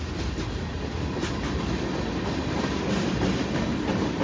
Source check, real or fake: real